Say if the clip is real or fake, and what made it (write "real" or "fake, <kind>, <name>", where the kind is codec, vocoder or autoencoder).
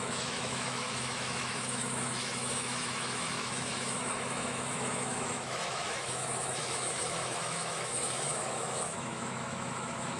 fake, autoencoder, DAC-VAE